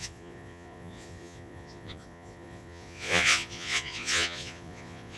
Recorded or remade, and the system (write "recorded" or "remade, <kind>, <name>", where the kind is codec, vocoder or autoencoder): remade, vocoder, Vocos